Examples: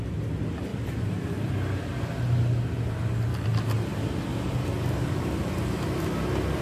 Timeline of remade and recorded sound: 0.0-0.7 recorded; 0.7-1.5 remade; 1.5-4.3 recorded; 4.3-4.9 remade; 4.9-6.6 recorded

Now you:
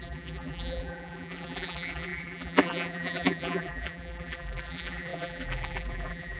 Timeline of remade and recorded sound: 0.0-6.4 remade